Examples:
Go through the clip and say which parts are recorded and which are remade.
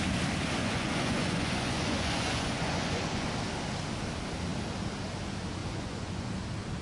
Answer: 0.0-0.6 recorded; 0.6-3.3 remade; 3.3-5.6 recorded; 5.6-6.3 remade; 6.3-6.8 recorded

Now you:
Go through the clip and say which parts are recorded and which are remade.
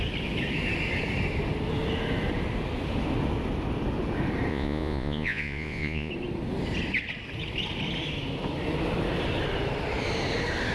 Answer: 0.0-4.5 recorded; 4.5-6.1 remade; 6.1-10.7 recorded